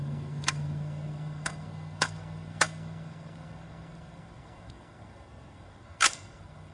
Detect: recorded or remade remade